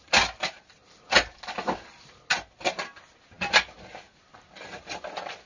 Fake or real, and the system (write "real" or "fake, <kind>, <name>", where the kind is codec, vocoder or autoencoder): real